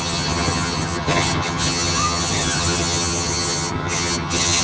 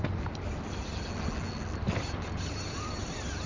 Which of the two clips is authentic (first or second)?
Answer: second